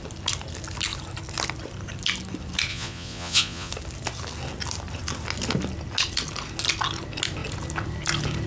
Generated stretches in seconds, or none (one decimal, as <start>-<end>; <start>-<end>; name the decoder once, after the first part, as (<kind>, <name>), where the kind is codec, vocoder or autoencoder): 2.7-3.7 (vocoder, Vocos)

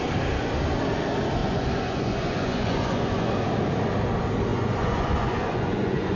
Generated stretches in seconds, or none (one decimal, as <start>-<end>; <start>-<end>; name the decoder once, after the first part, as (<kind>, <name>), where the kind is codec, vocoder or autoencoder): 1.4-3.3 (vocoder, Vocos); 4.5-6.2

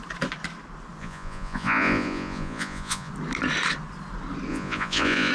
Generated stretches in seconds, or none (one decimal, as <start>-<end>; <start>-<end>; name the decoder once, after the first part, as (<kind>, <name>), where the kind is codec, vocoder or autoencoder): 1.0-3.1 (vocoder, Vocos); 4.5-5.3

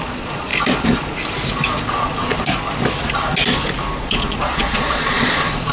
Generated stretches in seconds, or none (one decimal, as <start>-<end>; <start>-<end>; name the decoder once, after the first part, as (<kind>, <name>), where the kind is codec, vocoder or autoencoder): 0.0-0.5 (vocoder, Vocos); 1.9-2.5; 4.0-5.7

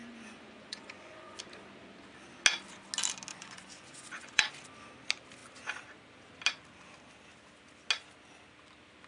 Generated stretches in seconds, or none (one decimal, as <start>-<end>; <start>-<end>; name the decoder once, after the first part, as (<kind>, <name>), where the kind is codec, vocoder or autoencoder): 0.0-1.4 (vocoder, Vocos); 3.3-4.5